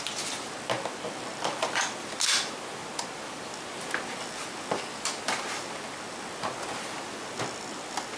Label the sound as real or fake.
real